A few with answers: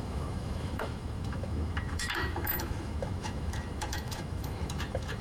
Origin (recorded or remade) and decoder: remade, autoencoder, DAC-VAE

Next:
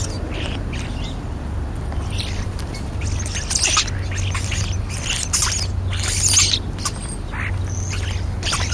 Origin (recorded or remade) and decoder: recorded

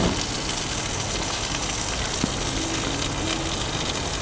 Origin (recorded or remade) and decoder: recorded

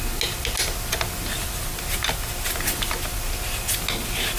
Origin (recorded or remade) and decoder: recorded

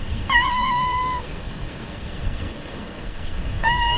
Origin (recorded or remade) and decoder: remade, codec, SNAC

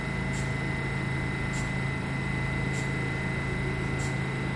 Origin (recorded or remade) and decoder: recorded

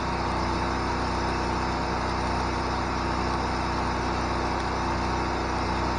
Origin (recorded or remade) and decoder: recorded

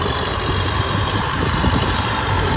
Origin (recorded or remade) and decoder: remade, vocoder, BigVGAN v2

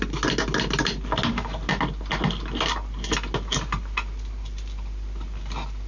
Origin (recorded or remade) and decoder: recorded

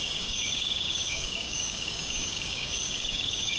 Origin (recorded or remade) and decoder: remade, codec, DAC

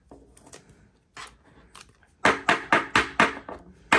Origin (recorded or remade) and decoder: recorded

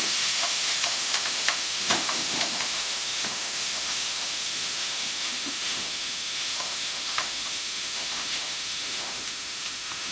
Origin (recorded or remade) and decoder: remade, autoencoder, DAC-VAE